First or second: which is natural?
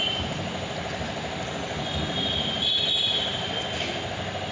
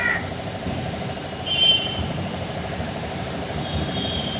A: first